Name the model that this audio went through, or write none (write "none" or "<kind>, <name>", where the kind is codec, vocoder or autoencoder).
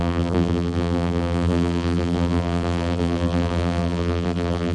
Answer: vocoder, BigVGAN v2